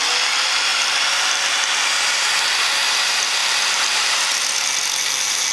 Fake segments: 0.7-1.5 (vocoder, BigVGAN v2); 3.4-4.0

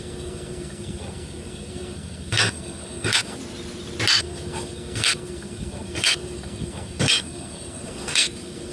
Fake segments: 0.0-3.4 (codec, SNAC); 4.2-8.7

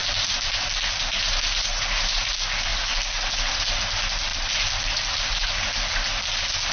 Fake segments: 0.0-2.3 (vocoder, BigVGAN v2); 4.3-5.3